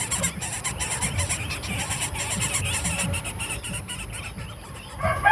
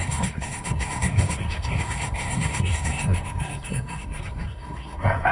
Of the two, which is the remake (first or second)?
second